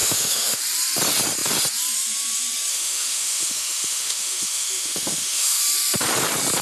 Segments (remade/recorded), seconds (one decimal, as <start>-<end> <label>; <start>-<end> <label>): 0.0-0.6 remade; 0.6-2.7 recorded; 2.7-5.6 remade; 5.6-6.6 recorded